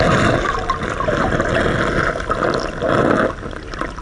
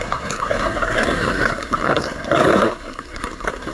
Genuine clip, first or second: first